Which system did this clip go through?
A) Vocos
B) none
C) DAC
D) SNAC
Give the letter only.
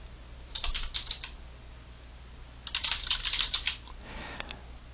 B